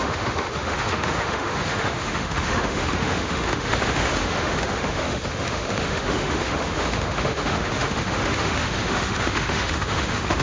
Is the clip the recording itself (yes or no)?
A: no